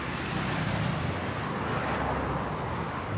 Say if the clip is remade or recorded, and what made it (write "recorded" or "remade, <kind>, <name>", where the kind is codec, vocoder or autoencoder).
recorded